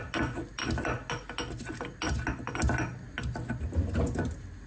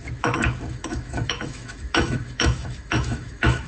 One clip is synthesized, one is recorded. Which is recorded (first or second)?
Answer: first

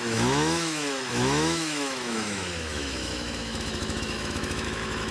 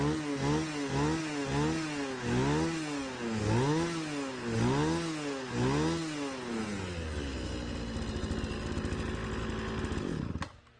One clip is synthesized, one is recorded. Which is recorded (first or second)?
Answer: second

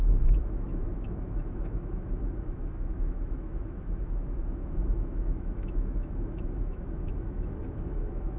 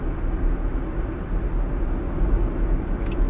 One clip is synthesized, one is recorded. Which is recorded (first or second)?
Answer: second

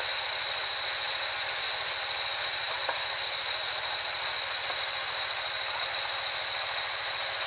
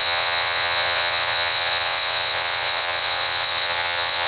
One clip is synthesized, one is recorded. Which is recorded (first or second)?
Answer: first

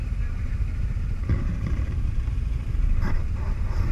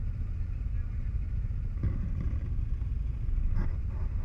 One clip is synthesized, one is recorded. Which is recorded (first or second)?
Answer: second